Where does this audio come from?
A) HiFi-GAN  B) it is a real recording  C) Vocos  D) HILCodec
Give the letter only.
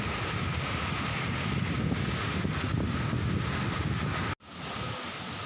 B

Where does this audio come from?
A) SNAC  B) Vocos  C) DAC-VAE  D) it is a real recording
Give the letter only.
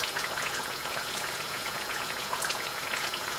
B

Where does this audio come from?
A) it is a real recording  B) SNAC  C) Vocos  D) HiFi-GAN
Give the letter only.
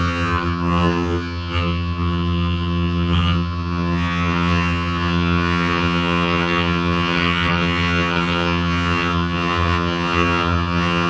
D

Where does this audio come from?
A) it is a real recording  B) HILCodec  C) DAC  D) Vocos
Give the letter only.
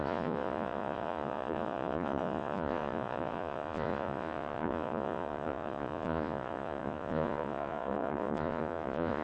D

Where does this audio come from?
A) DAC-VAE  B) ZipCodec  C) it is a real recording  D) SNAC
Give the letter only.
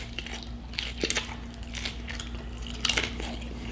C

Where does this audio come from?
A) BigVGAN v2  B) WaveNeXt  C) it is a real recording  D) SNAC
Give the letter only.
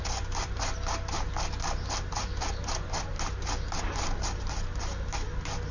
C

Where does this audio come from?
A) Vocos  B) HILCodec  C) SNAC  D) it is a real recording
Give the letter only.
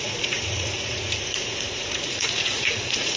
A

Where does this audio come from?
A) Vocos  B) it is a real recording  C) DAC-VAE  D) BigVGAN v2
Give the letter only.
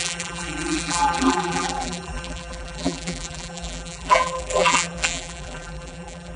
D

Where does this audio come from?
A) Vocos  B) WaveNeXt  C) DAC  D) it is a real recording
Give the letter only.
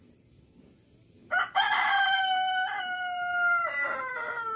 D